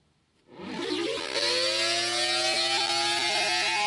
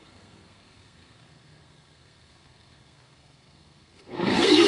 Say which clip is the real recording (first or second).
first